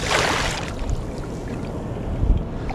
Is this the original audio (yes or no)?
yes